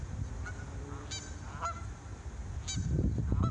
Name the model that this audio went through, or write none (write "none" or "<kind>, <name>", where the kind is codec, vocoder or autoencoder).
none